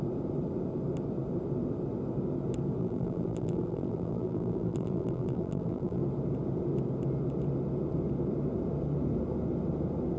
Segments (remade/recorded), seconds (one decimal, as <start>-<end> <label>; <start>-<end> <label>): 0.0-2.8 recorded; 2.8-6.0 remade; 6.0-10.2 recorded